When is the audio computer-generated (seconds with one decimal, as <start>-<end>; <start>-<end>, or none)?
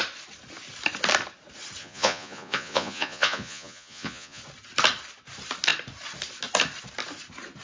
1.8-4.4